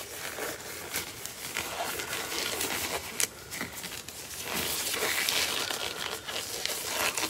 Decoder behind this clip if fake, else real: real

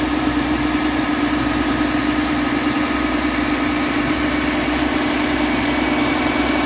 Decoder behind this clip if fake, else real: fake, vocoder, BigVGAN v2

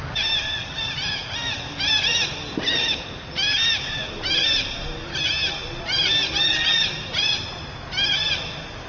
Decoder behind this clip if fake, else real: real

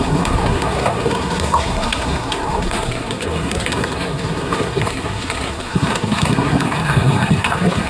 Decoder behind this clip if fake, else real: fake, codec, SNAC